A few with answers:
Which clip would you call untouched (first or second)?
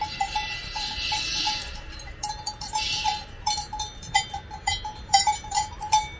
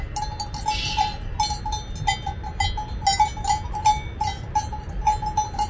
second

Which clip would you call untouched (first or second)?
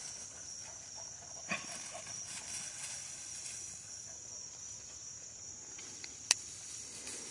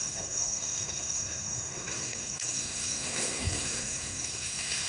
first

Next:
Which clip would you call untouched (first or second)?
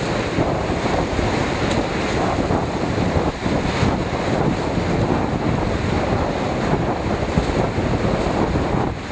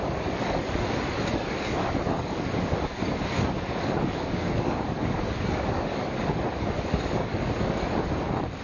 first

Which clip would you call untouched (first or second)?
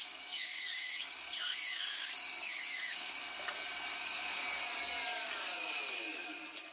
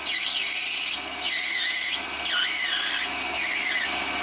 second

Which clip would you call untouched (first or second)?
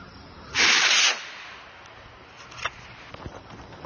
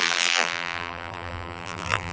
first